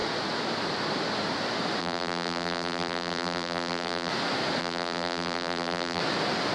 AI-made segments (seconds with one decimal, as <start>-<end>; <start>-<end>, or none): 1.8-4.1; 4.6-6.0